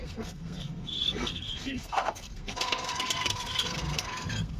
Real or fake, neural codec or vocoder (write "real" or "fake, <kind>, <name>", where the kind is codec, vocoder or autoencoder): fake, codec, SNAC